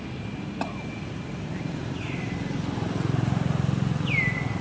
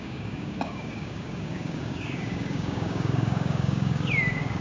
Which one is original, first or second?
first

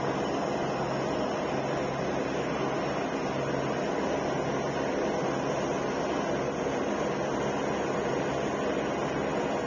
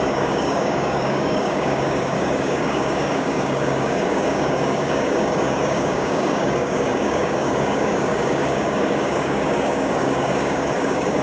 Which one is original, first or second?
first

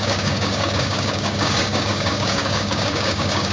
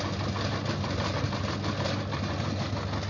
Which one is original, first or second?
second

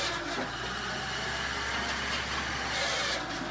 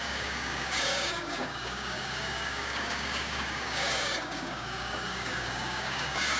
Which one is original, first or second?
first